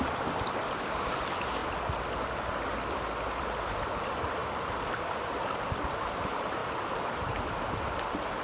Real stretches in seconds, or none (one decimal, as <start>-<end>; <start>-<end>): 0.0-1.6; 2.5-4.4; 5.3-6.6; 7.8-8.4